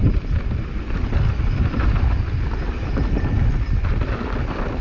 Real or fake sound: real